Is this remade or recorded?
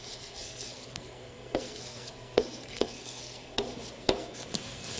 remade